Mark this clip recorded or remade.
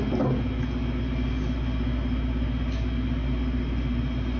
recorded